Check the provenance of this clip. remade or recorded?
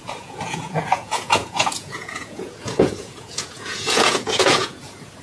remade